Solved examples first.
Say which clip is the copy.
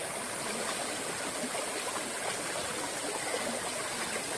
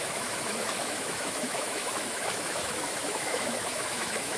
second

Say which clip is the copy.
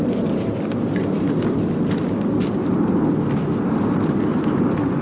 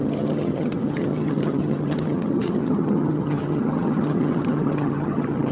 second